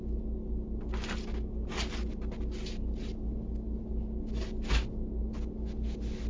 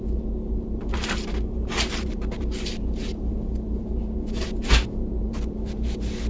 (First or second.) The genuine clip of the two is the first